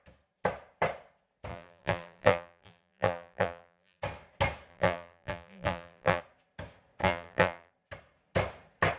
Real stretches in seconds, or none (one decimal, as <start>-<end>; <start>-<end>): 0.0-1.5; 4.0-4.7; 6.2-7.0; 7.7-9.0